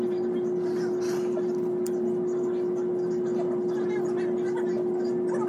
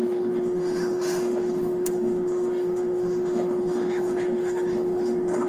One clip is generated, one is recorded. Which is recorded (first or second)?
first